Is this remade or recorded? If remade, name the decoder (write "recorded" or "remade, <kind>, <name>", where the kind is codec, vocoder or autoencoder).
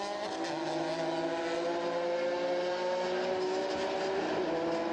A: recorded